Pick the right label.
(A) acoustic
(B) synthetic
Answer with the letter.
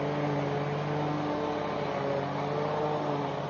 A